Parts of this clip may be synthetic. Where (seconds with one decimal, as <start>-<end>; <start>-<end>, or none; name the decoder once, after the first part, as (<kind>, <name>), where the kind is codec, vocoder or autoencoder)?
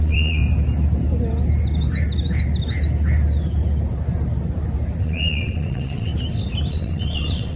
0.0-0.4 (vocoder, WaveNeXt); 5.0-6.1; 6.7-7.6